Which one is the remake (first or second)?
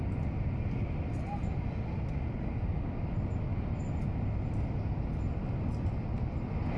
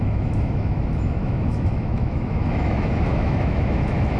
second